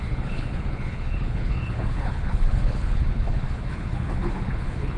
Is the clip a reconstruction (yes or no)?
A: yes